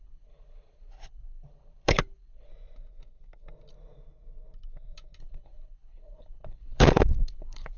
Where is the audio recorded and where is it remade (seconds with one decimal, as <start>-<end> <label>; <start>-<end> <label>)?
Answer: 0.0-2.5 remade; 2.5-5.2 recorded; 5.2-7.8 remade

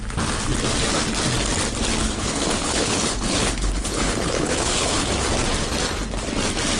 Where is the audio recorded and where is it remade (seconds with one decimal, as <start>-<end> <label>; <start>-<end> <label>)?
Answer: 0.0-2.0 recorded; 2.0-5.1 remade; 5.1-6.8 recorded

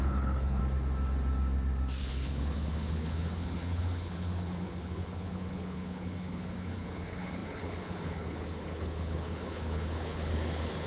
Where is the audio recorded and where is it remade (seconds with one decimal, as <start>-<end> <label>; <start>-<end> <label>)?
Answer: 0.0-0.6 remade; 0.6-2.0 recorded; 2.0-10.9 remade